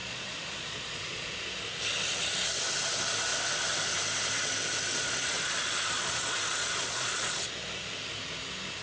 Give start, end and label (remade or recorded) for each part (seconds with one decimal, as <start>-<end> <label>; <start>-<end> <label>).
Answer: 0.0-1.3 remade; 1.3-4.9 recorded; 4.9-7.5 remade; 7.5-8.8 recorded